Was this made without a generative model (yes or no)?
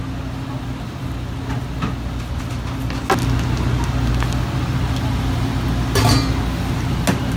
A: yes